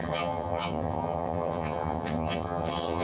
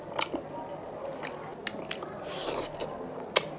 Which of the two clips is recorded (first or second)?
second